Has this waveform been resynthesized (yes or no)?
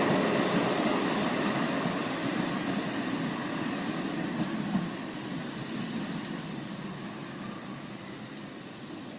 no